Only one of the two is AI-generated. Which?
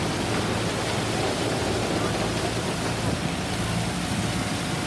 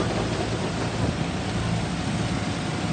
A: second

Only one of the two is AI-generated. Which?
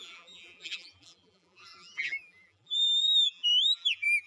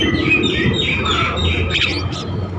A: first